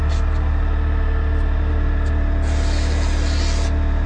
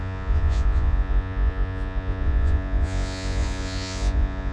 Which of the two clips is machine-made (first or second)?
second